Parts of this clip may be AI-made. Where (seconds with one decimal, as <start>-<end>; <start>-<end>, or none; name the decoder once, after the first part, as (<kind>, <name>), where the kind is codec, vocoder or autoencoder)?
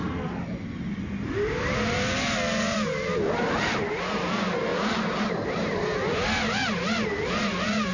4.7-6.2 (vocoder, BigVGAN v2)